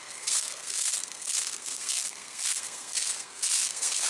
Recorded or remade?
remade